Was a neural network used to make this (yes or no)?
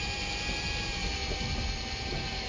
no